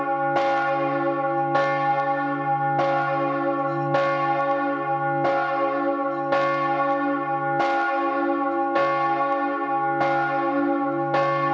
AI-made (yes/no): no